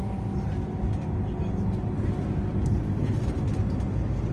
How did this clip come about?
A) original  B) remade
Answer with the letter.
A